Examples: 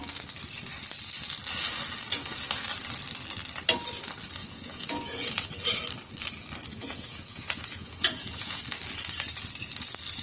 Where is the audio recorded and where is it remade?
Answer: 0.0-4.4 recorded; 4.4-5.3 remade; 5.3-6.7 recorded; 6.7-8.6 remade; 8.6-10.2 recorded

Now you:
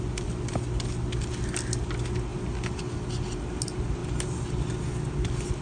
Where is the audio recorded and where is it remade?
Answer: 0.0-5.6 recorded

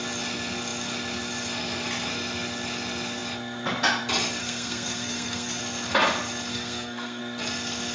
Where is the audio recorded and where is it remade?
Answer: 0.0-4.4 recorded; 4.4-5.6 remade; 5.6-6.5 recorded; 6.5-7.2 remade; 7.2-7.9 recorded

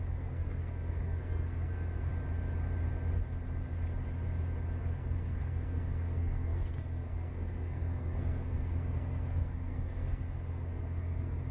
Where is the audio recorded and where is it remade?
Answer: 0.0-2.1 remade; 2.1-4.8 recorded; 4.8-11.5 remade

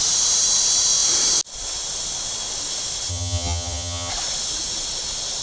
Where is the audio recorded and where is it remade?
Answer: 0.0-3.1 recorded; 3.1-4.1 remade; 4.1-5.4 recorded